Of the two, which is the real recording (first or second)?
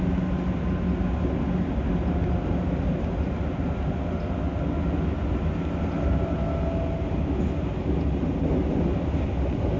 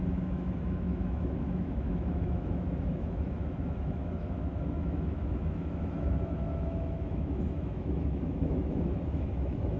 first